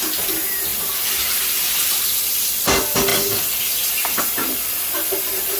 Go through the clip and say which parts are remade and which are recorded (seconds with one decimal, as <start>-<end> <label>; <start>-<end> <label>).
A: 0.0-5.6 recorded